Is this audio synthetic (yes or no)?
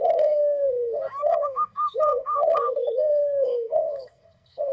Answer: yes